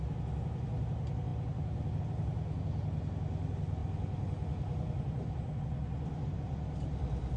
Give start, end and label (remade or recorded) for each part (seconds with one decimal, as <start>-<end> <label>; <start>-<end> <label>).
0.0-7.4 recorded